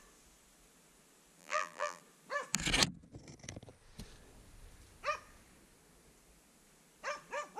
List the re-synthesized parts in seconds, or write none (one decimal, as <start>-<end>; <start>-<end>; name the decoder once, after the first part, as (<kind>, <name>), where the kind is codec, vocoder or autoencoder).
1.4-2.0 (vocoder, BigVGAN v2)

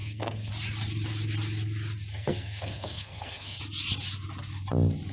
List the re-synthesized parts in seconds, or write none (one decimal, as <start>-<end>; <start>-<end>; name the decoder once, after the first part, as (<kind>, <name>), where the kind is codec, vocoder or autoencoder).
0.0-0.5 (codec, SNAC); 2.1-3.6

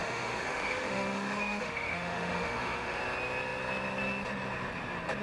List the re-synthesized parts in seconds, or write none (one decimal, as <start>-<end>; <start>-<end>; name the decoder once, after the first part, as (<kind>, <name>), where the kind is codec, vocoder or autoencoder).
0.0-3.0 (autoencoder, DAC-VAE)

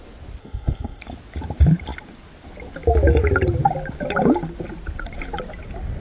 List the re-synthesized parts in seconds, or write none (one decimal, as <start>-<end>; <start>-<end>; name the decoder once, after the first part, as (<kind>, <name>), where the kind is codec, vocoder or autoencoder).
0.4-1.0 (codec, ZipCodec)